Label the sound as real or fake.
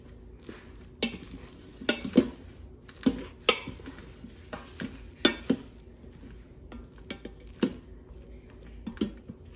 real